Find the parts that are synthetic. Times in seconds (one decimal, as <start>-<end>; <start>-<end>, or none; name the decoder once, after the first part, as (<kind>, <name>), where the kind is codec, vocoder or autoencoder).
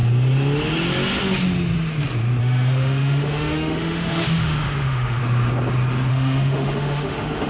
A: 2.4-5.2 (autoencoder, DAC-VAE); 6.1-7.5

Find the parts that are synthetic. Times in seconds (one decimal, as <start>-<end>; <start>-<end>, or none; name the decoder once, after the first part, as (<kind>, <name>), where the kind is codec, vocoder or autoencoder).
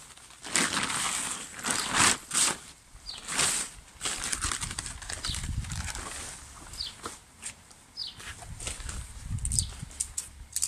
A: none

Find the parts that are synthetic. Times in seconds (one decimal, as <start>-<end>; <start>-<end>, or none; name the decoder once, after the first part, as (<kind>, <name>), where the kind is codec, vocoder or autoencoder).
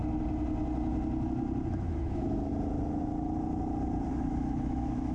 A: 1.7-2.5 (autoencoder, DAC-VAE); 4.1-5.1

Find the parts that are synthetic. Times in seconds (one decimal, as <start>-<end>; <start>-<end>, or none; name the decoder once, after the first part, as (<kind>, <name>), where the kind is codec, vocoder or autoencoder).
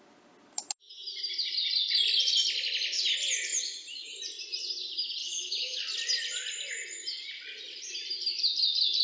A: 5.2-5.8 (autoencoder, DAC-VAE)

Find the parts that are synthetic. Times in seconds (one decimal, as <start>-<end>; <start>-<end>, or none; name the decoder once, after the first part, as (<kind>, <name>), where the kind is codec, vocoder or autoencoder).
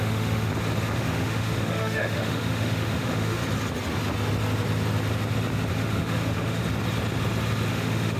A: 0.0-0.5 (autoencoder, DAC-VAE); 1.0-3.4; 5.7-6.6; 7.7-8.2